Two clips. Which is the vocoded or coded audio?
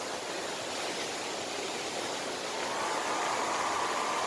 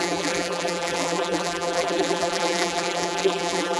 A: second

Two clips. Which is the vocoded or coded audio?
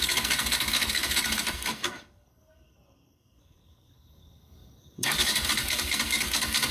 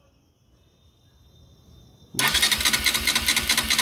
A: first